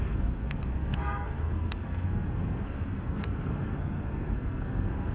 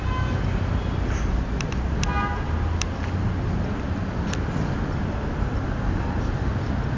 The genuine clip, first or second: second